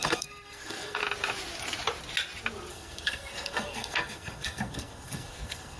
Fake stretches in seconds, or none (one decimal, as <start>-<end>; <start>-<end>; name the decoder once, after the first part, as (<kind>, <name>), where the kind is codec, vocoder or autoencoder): 0.0-1.0 (codec, SNAC); 2.7-5.8